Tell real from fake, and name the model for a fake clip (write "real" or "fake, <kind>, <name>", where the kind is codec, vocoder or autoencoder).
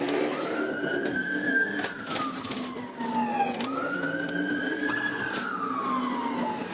real